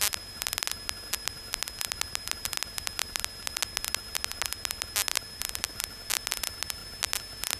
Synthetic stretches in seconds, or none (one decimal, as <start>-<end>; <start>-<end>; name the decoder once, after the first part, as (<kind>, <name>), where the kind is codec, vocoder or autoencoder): 3.0-3.5 (vocoder, BigVGAN v2); 5.1-6.2